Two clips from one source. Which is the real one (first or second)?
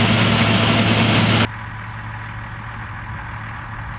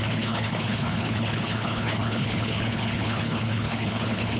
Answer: first